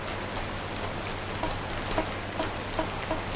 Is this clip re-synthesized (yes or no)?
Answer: no